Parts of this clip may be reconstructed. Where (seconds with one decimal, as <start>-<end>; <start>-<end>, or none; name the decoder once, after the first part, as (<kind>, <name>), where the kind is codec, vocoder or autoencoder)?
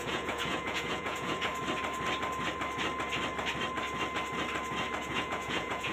0.0-1.5 (vocoder, Vocos); 5.0-5.9